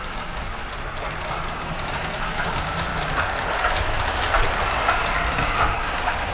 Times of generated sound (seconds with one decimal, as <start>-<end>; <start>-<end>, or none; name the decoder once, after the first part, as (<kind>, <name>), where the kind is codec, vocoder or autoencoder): 0.0-0.6 (codec, DAC); 1.2-2.9; 5.3-6.3